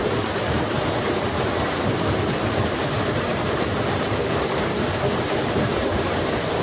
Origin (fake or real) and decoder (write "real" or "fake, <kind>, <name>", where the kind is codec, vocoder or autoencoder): fake, vocoder, BigVGAN v2